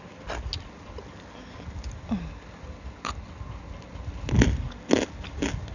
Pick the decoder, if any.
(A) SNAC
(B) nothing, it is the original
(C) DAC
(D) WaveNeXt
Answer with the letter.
B